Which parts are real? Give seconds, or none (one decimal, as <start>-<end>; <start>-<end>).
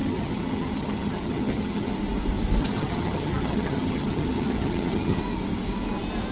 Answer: 1.9-2.6; 5.2-6.3